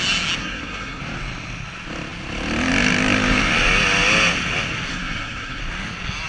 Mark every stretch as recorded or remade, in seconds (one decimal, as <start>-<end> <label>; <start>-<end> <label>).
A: 0.0-0.4 recorded; 0.4-1.0 remade; 1.0-4.9 recorded; 4.9-5.6 remade; 5.6-6.3 recorded